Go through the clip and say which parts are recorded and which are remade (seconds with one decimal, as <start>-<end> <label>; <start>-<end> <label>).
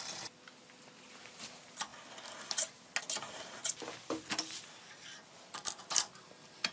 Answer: 0.0-1.9 remade; 1.9-3.0 recorded; 3.0-3.6 remade; 3.6-4.2 recorded; 4.2-6.7 remade